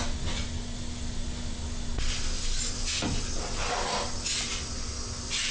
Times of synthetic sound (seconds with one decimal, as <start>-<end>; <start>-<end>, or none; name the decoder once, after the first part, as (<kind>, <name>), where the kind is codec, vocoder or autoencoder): none